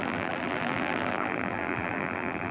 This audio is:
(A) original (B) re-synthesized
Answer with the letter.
B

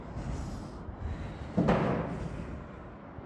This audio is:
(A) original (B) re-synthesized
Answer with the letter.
A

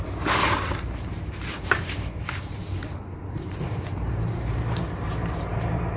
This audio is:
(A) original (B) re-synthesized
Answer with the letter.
B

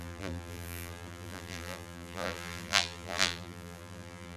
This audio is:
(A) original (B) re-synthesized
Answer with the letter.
B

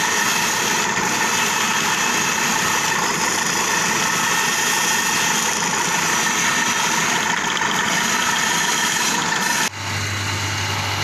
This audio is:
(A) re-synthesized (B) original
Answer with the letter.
B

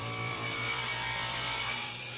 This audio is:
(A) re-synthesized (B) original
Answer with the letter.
A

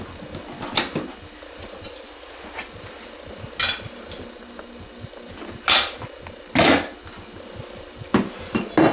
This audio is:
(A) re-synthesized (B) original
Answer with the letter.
B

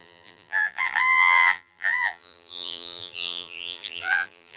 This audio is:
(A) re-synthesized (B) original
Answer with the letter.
A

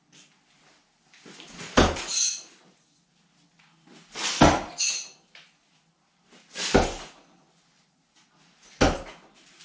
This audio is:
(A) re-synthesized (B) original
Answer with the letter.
B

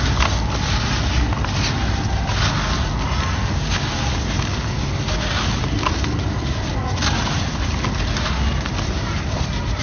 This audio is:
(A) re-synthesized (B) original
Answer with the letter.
B